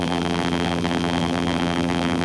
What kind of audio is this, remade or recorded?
remade